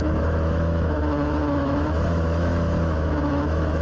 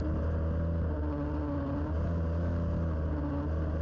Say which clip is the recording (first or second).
second